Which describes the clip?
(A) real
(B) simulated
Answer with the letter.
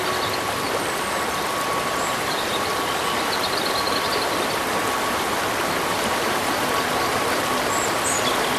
B